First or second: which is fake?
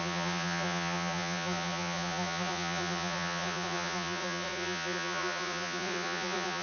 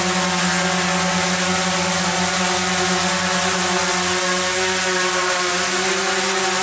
first